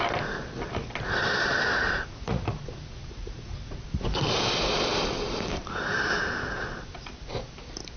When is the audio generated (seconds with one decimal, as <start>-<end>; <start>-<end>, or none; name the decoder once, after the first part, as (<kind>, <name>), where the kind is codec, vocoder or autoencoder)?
1.7-3.8 (vocoder, Vocos)